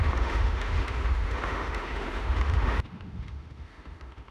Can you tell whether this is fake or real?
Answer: fake